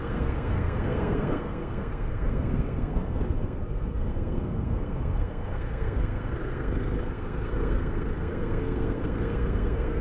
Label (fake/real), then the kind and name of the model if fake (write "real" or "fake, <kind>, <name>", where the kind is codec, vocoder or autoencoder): fake, codec, SNAC